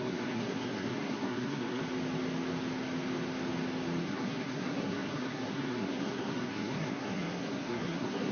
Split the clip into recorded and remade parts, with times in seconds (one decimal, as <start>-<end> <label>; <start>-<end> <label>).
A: 0.0-1.8 remade; 1.8-4.0 recorded; 4.0-8.3 remade